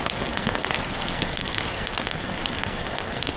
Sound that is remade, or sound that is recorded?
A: remade